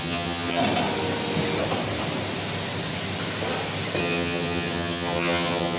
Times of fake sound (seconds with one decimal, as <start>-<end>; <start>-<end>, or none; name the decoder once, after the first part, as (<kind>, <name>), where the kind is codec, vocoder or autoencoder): 0.0-0.6 (vocoder, HiFi-GAN); 4.0-5.8

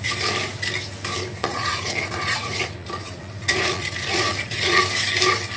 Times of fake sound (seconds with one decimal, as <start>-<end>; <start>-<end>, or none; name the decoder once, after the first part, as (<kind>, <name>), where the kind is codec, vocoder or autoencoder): 1.4-4.8 (vocoder, Vocos)

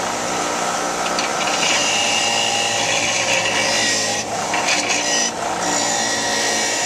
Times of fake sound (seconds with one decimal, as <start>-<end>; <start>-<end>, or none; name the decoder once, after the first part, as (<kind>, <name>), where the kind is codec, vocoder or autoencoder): 1.3-2.2 (vocoder, BigVGAN v2); 4.1-4.8

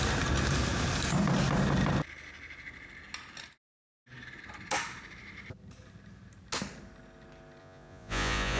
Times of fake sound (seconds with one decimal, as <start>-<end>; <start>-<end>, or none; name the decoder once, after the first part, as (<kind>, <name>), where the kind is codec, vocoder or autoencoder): 7.6-8.6 (vocoder, Vocos)